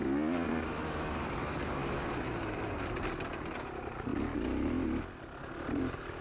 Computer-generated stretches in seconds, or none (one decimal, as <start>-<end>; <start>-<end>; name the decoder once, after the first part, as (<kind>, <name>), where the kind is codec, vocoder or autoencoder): none